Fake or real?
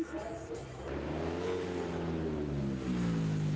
real